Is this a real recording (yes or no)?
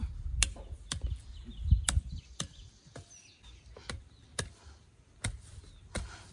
yes